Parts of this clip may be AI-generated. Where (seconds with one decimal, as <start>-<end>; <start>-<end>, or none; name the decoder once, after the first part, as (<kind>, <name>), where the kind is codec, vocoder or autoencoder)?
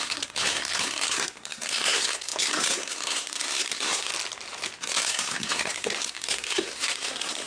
0.0-4.1 (codec, SNAC); 4.8-7.5